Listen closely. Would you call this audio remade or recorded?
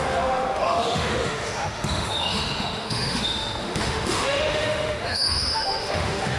remade